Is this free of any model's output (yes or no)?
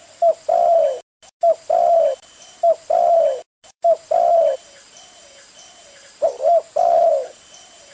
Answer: yes